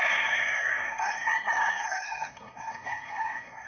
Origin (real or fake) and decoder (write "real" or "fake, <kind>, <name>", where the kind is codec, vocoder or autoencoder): fake, codec, SNAC